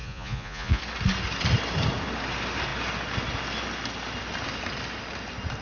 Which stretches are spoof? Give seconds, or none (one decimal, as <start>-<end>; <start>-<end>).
0.0-0.8